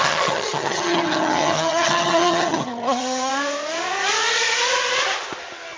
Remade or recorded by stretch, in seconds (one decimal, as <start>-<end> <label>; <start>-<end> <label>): 0.0-3.3 remade; 3.3-5.8 recorded